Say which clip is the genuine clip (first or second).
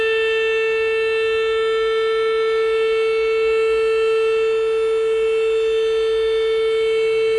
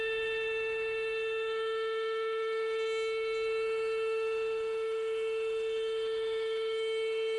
first